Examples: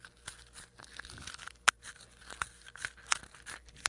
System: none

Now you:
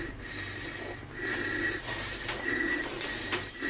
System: none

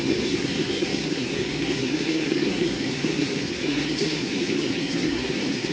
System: codec, SNAC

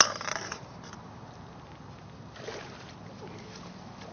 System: none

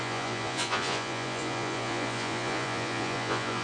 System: vocoder, Vocos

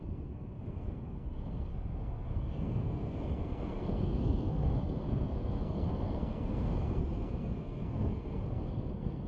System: codec, SNAC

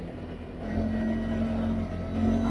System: none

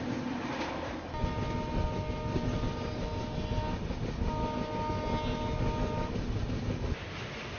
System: none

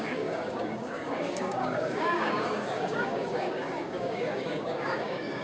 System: codec, DAC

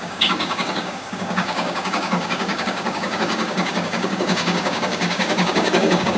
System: codec, DAC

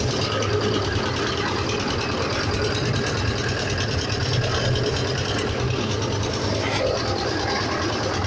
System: none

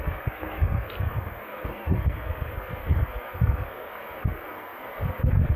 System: codec, SNAC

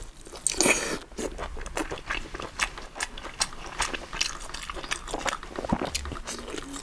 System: none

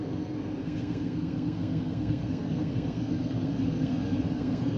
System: codec, SNAC